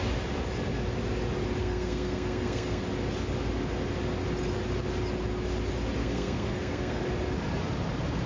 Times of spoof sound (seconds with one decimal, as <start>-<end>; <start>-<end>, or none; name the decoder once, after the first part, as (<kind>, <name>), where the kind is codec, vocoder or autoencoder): 1.6-2.8 (codec, SNAC); 6.0-7.0